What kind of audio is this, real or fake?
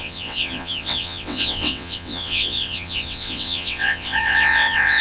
fake